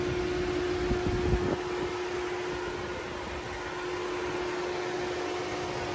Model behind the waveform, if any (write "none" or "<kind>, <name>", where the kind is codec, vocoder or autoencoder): none